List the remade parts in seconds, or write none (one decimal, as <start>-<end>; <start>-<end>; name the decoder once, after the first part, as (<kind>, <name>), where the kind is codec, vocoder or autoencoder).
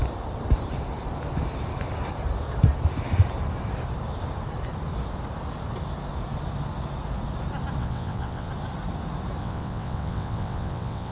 7.8-8.5 (vocoder, WaveNeXt); 9.4-11.1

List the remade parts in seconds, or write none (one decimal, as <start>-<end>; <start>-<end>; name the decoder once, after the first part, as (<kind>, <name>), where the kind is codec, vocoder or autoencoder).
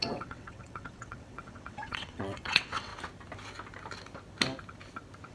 0.0-2.9 (vocoder, WaveNeXt)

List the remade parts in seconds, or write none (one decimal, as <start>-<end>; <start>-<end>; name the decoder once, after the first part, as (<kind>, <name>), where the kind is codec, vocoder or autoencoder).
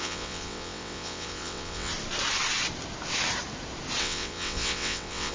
0.0-1.9 (vocoder, WaveNeXt); 4.0-5.3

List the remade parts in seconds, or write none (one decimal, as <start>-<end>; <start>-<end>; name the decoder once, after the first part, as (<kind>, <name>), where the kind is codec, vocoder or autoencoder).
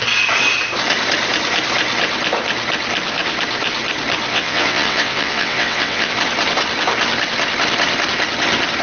4.3-6.1 (vocoder, WaveNeXt)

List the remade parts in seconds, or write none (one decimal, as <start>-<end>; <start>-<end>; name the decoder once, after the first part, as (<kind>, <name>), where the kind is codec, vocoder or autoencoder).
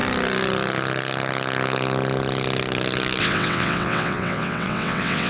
3.2-5.3 (vocoder, WaveNeXt)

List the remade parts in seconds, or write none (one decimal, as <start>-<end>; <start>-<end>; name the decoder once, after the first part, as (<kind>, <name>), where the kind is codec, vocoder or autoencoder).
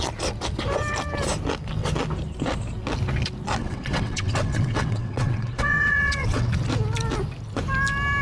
3.6-6.5 (vocoder, WaveNeXt)